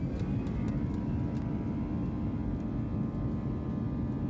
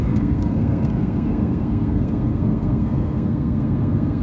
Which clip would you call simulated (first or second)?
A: second